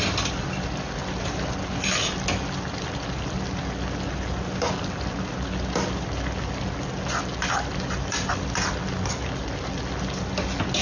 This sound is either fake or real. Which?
real